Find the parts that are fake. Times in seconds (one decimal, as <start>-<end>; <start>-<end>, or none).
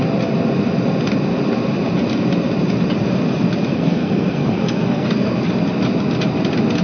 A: 3.7-5.4